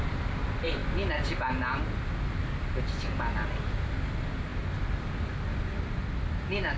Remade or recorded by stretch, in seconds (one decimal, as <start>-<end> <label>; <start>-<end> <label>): 0.0-6.8 recorded